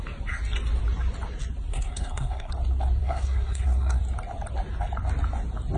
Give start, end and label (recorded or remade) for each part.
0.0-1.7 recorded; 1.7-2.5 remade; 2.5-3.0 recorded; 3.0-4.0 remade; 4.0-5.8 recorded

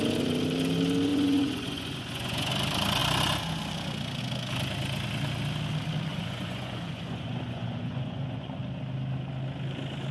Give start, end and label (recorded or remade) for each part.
0.0-1.1 recorded; 1.1-2.5 remade; 2.5-6.1 recorded; 6.1-8.6 remade; 8.6-10.1 recorded

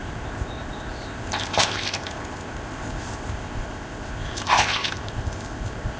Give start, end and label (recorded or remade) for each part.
0.0-6.0 remade

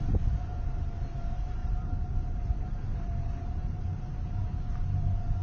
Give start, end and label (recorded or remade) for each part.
0.0-1.6 recorded; 1.6-4.6 remade; 4.6-5.4 recorded